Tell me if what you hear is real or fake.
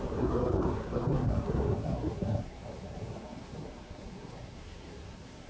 fake